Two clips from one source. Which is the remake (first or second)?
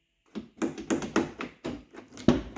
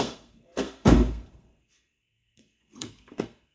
second